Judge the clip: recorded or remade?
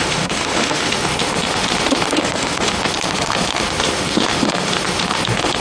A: remade